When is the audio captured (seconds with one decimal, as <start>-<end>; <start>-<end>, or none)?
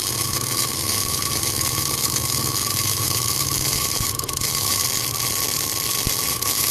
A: 4.8-6.3